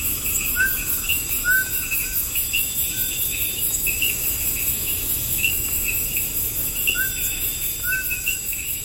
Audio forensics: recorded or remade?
remade